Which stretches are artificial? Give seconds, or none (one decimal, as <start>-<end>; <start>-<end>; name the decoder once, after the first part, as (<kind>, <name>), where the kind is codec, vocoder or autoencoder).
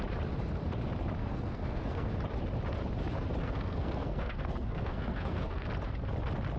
1.2-2.1 (codec, SNAC); 3.4-5.7